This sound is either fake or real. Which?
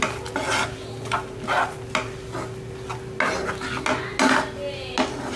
real